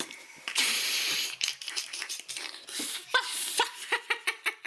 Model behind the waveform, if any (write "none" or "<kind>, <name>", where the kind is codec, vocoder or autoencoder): vocoder, BigVGAN v2